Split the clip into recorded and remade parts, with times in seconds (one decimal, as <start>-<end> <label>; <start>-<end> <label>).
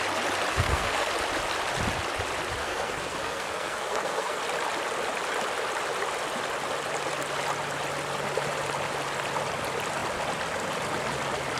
0.0-0.5 recorded; 0.5-1.1 remade; 1.1-2.6 recorded; 2.6-4.4 remade; 4.4-11.6 recorded